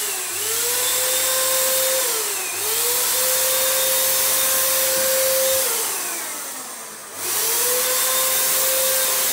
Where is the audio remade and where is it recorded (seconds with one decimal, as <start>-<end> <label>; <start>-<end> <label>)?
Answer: 0.0-9.3 recorded